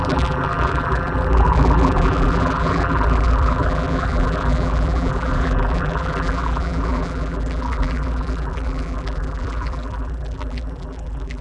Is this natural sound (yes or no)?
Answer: no